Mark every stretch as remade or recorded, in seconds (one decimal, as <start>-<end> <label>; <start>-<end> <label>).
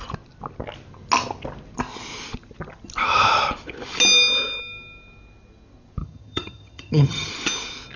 0.0-6.0 recorded; 6.0-7.3 remade; 7.3-8.0 recorded